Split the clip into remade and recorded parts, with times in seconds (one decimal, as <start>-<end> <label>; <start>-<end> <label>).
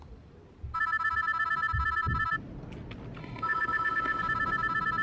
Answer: 0.0-3.2 recorded; 3.2-4.2 remade; 4.2-5.0 recorded